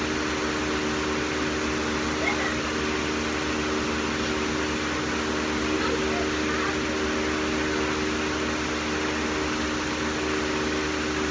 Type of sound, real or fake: real